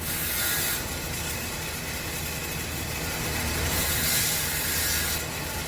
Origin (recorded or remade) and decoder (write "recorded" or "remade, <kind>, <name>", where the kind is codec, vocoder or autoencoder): recorded